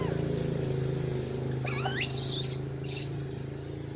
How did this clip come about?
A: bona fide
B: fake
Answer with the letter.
A